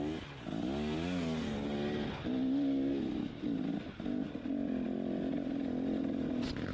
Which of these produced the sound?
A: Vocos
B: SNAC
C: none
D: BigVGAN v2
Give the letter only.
C